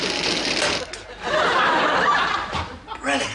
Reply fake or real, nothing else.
real